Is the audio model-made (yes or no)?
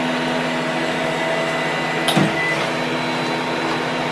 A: no